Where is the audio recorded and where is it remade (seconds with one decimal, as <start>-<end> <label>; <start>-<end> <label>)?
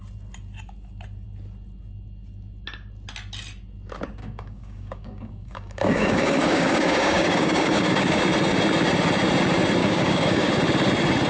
0.0-4.2 recorded; 4.2-8.2 remade; 8.2-9.8 recorded; 9.8-10.5 remade; 10.5-11.3 recorded